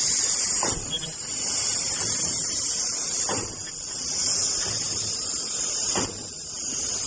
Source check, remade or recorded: recorded